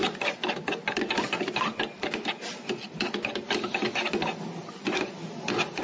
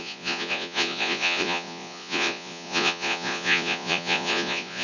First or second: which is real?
first